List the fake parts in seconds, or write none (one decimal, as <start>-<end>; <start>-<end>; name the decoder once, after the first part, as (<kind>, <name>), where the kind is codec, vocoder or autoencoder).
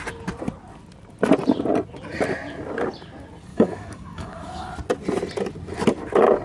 3.5-4.7 (codec, DAC)